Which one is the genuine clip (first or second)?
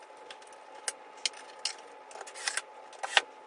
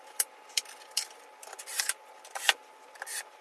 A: first